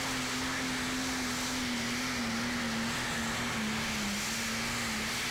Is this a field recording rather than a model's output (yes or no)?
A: yes